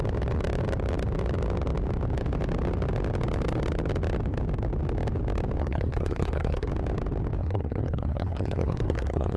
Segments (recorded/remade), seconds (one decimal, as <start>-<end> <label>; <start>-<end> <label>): 0.0-5.6 recorded; 5.6-6.7 remade; 6.7-7.4 recorded; 7.4-9.4 remade